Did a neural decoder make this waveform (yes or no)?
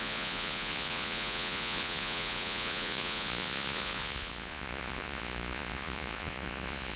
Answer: yes